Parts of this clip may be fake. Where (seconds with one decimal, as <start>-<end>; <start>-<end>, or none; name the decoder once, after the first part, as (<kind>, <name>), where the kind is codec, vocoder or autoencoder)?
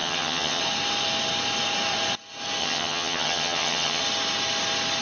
0.0-0.6 (vocoder, HiFi-GAN); 2.6-4.0